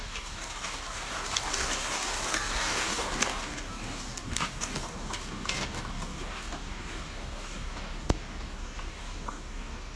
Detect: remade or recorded remade